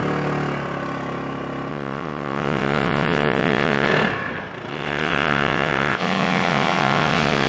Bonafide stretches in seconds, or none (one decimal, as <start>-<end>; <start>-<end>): 0.0-1.7; 3.9-4.7